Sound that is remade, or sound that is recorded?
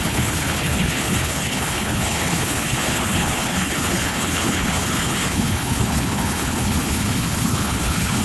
remade